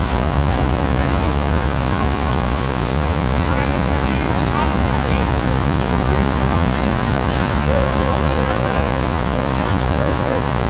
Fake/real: fake